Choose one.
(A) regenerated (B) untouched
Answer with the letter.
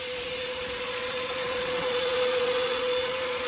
A